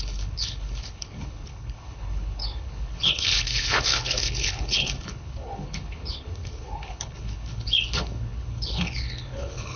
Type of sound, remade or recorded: remade